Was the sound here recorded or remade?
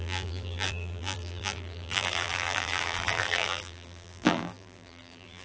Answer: remade